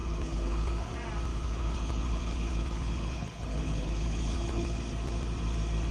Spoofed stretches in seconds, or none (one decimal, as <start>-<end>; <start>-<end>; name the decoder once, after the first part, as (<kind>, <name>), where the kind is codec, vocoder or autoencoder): 0.0-0.9 (codec, HILCodec); 1.3-4.8